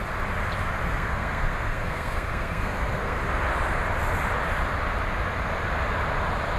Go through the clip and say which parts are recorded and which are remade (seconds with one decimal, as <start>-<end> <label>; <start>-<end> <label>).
0.0-0.8 recorded; 0.8-3.2 remade; 3.2-6.6 recorded